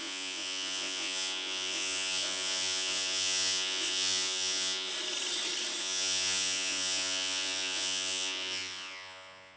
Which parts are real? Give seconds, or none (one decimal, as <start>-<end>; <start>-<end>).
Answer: 4.9-5.8